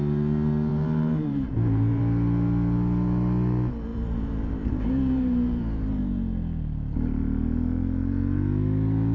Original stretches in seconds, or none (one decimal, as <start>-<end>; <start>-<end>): 0.0-0.7; 2.0-3.9; 6.0-9.1